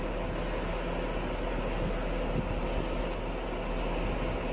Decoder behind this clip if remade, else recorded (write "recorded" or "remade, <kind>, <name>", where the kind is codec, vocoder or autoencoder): recorded